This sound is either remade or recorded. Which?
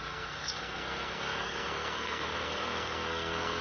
remade